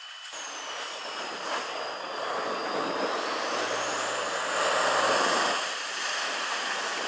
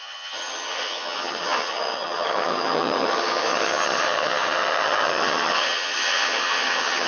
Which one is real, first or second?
first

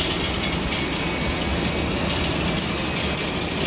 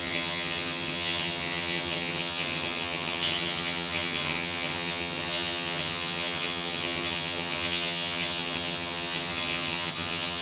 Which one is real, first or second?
first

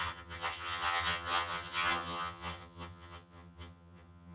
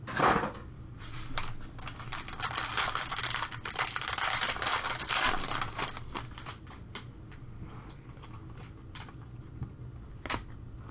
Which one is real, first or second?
second